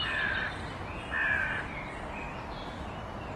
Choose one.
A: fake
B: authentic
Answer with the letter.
B